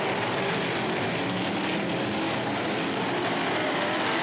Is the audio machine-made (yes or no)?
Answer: no